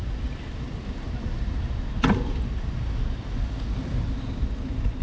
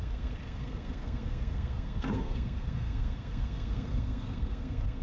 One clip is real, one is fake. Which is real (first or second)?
first